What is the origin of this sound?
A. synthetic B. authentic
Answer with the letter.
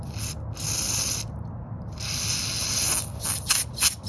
B